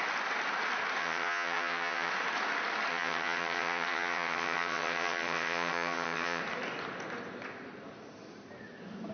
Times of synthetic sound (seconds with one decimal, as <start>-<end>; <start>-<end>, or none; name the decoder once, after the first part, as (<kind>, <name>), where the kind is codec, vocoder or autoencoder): 1.0-2.1 (vocoder, HiFi-GAN); 2.9-6.4

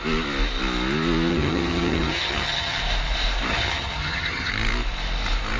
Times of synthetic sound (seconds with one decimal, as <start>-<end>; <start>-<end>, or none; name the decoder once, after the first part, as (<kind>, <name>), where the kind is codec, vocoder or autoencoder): 1.3-2.8 (vocoder, HiFi-GAN); 3.5-4.5